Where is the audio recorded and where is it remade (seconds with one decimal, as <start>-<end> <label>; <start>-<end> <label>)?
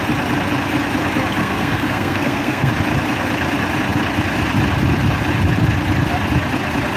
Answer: 0.0-1.4 recorded; 1.4-2.7 remade; 2.7-7.0 recorded